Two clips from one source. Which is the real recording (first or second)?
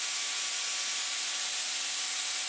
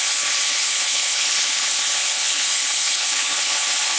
first